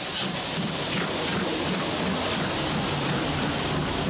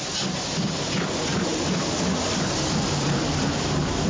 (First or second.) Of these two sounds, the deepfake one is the first